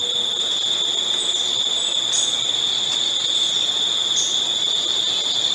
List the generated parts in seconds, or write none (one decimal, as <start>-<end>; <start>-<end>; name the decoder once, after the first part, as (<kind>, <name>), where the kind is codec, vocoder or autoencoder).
2.7-3.6 (vocoder, Vocos)